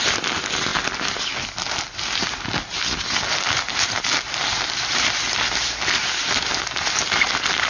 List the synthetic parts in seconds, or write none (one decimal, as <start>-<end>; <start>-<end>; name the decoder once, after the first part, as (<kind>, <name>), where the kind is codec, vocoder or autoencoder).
4.5-5.2 (vocoder, BigVGAN v2)